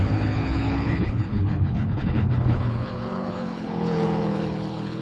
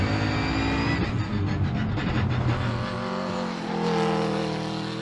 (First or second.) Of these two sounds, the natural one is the second